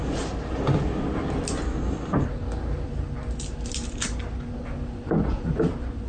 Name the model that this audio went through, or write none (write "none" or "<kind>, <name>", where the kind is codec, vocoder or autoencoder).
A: none